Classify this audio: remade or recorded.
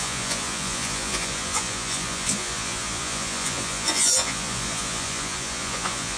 remade